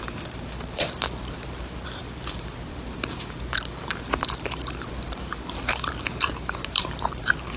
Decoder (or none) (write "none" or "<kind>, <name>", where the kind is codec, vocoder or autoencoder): vocoder, BigVGAN v2